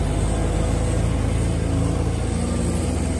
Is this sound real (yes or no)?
yes